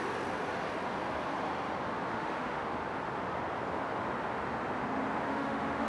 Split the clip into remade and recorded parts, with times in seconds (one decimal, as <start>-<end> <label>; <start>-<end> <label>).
0.0-2.1 recorded; 2.1-2.7 remade; 2.7-5.3 recorded; 5.3-5.9 remade